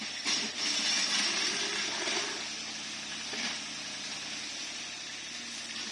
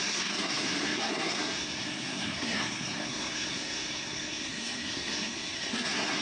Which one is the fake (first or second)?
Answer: second